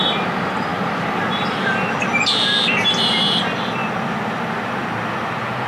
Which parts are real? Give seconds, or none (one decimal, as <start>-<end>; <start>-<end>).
0.0-5.7